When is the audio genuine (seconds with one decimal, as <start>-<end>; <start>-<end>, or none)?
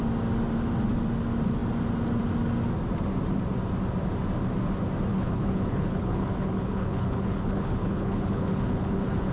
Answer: 0.0-5.1